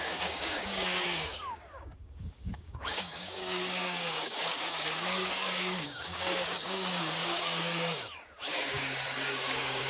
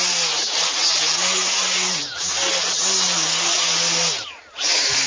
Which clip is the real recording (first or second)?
second